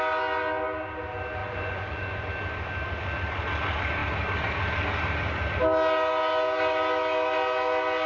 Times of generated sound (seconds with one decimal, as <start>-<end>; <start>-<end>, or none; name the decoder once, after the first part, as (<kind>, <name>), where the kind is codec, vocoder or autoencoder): 1.4-2.3 (vocoder, Vocos)